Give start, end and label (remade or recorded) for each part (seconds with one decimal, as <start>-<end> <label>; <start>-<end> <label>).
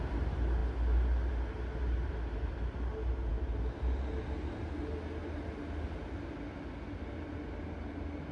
0.0-8.3 recorded